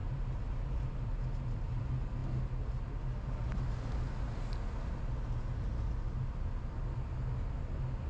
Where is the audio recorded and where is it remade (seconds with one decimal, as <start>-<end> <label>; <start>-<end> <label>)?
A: 0.0-8.1 recorded